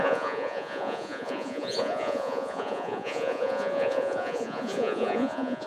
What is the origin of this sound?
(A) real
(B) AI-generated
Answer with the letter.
B